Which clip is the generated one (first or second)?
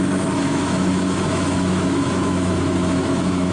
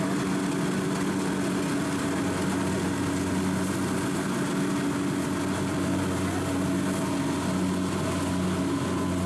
first